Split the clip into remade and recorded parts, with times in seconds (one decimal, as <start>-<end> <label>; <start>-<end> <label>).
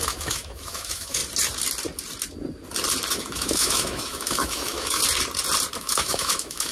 0.0-1.2 remade; 1.2-3.1 recorded; 3.1-5.0 remade; 5.0-5.8 recorded; 5.8-6.7 remade